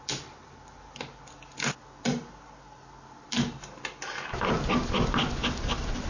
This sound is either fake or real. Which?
real